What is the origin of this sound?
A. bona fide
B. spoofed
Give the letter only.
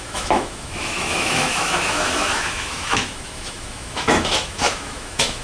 B